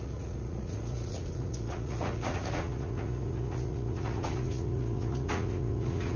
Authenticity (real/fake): fake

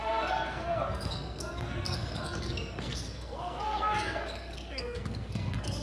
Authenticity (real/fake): fake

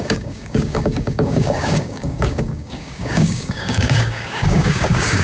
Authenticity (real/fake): fake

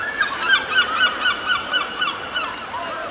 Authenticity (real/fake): fake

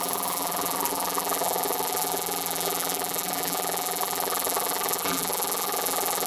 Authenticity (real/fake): fake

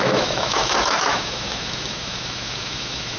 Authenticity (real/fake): fake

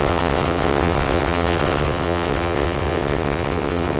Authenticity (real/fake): fake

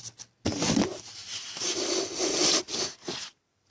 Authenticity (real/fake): real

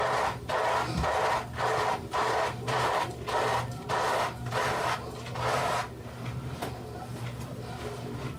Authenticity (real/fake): real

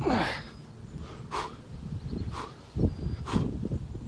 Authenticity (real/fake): real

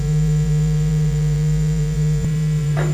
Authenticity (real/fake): fake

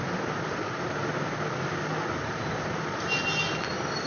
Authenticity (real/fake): real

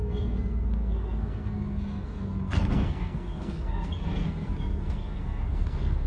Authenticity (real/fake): fake